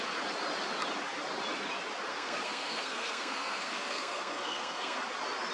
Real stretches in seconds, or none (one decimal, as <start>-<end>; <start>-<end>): 0.0-2.1; 5.0-5.5